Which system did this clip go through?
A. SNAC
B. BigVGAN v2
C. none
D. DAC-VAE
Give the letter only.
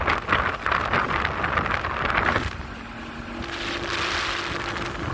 C